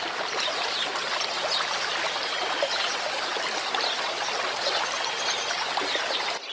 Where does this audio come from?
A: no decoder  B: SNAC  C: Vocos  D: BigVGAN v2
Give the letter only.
A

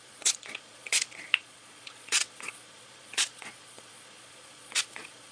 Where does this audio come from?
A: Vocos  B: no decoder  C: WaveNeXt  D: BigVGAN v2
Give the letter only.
A